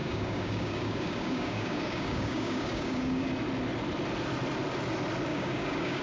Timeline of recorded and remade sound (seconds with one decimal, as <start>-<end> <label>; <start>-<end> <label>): 0.0-3.3 remade; 3.3-5.3 recorded; 5.3-6.0 remade